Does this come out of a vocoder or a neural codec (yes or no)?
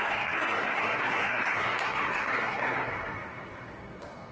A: yes